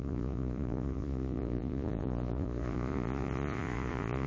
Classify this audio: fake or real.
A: fake